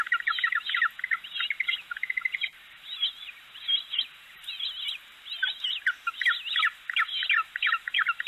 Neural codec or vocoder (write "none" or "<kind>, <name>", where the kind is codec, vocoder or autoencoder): none